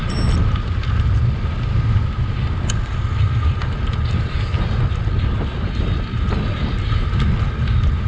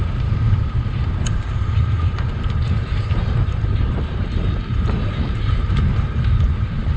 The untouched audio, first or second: first